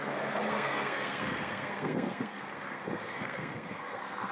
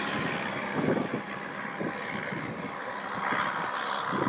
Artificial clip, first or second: first